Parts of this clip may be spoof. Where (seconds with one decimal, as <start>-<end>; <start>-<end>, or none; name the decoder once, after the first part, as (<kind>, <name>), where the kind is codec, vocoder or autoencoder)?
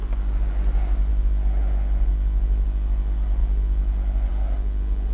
none